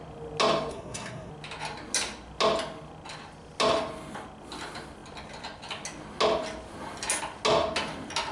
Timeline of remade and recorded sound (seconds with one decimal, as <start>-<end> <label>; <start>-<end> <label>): 0.0-0.7 recorded; 0.7-1.3 remade; 1.3-8.3 recorded